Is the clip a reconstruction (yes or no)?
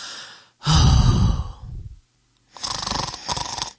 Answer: no